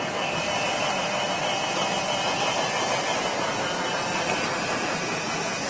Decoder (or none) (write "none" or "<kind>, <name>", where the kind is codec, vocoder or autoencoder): none